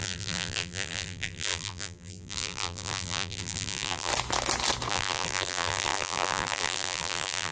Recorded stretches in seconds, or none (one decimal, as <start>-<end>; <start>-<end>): 4.1-4.9

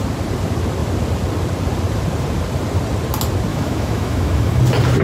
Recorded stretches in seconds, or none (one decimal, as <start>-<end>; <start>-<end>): 0.0-3.5; 4.6-5.0

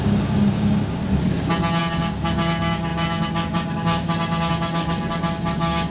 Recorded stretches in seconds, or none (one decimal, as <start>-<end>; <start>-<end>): 1.0-1.8

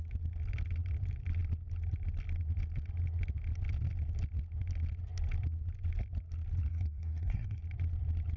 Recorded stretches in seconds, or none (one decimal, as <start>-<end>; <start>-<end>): 0.0-6.7; 7.6-8.4

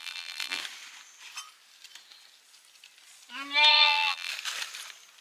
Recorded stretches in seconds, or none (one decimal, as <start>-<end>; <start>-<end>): 0.6-3.7; 4.3-5.2

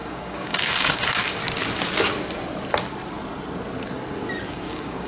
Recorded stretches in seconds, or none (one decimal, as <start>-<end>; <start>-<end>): 1.4-4.5

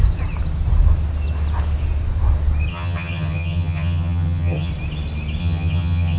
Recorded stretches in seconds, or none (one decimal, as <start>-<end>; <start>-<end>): 0.0-2.7; 4.7-5.4

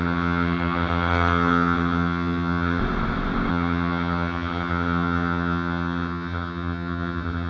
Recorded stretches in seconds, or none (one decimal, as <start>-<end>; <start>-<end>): 2.8-3.5